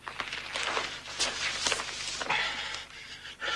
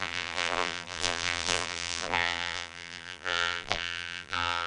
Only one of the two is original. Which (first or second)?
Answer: first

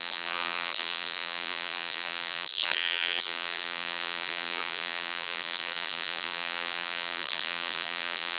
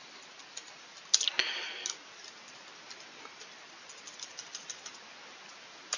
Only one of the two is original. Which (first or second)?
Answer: second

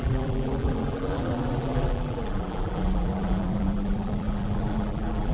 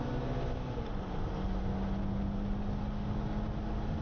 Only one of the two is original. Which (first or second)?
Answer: second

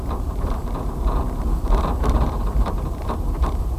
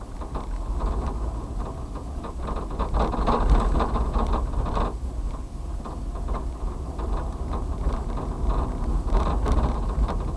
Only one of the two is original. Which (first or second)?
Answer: second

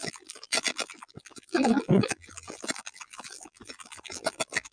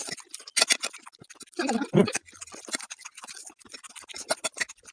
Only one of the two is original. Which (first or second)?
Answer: second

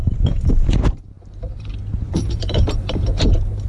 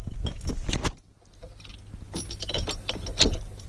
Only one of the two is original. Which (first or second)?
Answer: second